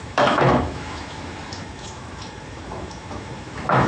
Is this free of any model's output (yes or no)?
no